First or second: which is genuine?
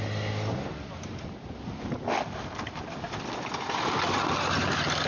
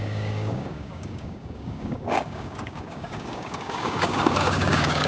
first